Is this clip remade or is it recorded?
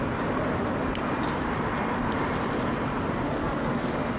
recorded